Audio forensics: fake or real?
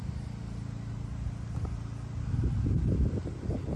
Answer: real